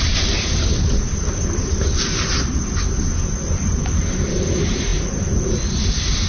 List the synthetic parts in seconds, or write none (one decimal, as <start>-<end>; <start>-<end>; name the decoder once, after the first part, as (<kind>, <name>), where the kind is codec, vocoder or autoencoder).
none